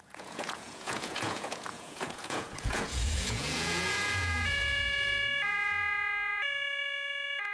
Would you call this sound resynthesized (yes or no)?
yes